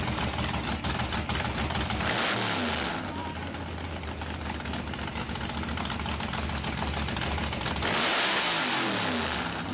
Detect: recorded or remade recorded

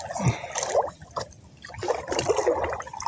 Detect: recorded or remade recorded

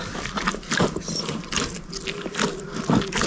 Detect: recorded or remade recorded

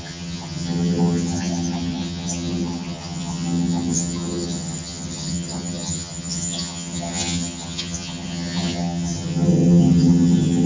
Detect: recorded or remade remade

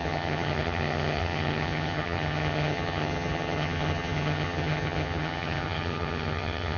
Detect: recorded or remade remade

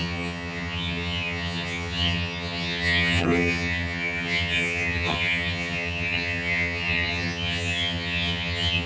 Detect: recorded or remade remade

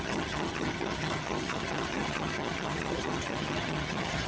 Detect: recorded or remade remade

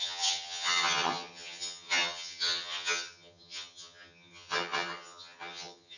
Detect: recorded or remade remade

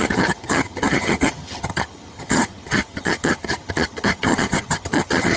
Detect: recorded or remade remade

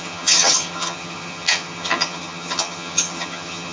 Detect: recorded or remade remade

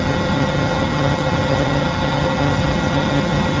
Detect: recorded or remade remade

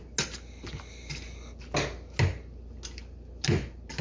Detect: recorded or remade recorded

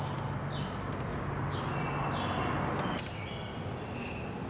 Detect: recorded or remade recorded